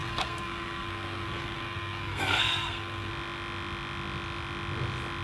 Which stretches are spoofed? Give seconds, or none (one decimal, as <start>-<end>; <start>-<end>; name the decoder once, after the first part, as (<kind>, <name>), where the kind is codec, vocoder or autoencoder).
0.0-3.1 (codec, SNAC)